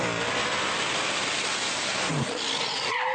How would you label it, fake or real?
real